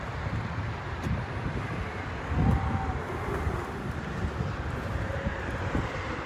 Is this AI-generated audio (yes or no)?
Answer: no